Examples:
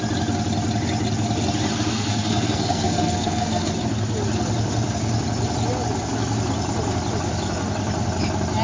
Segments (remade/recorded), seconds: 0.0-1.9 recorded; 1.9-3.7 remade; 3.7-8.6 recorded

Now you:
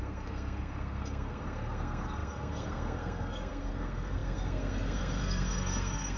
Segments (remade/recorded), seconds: 0.0-6.2 remade